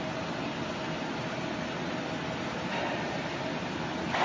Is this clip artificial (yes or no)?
no